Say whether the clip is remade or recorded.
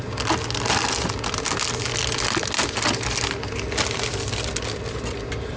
recorded